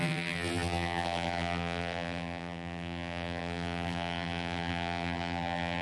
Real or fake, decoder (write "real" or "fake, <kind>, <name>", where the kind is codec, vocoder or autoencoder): fake, vocoder, BigVGAN v2